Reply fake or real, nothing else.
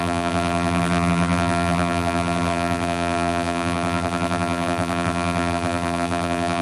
fake